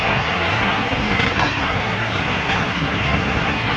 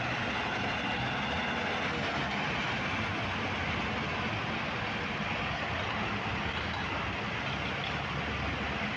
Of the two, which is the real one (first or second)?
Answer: second